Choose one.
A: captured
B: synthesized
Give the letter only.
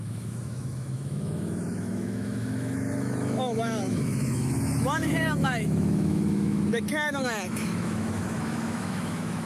B